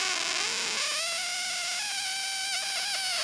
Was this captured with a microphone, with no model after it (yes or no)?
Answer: yes